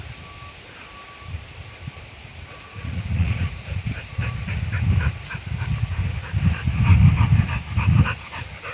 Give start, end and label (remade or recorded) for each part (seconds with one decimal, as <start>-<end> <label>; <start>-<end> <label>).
0.0-2.3 recorded; 2.3-4.6 remade; 4.6-8.7 recorded